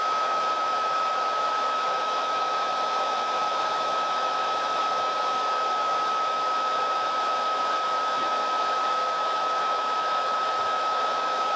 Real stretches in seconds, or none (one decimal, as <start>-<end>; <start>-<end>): none